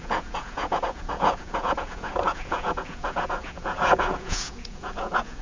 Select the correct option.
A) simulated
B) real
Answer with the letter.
A